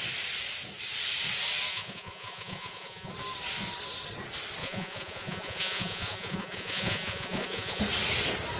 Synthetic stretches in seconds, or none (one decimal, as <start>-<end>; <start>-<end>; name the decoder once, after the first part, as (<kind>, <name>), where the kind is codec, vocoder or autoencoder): 1.7-3.1 (vocoder, Vocos); 4.6-7.8